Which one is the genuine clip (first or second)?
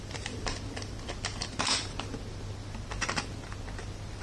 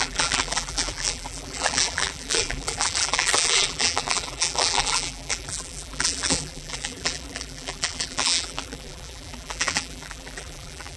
first